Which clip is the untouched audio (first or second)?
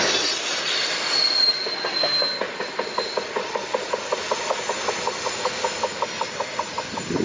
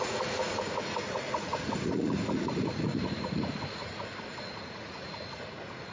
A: first